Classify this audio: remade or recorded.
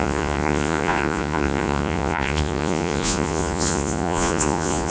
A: remade